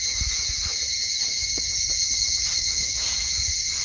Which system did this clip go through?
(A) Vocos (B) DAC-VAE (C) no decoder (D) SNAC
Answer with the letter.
A